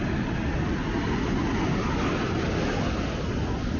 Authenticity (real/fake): real